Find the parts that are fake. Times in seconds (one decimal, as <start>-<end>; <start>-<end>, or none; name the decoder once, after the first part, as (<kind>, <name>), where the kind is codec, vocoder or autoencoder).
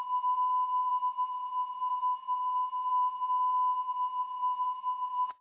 0.0-5.4 (vocoder, BigVGAN v2)